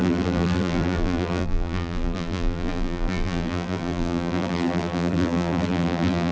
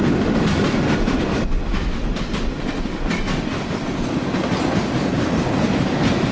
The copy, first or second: first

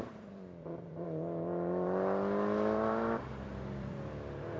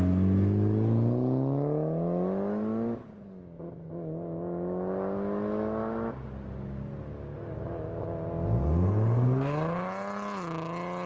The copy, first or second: first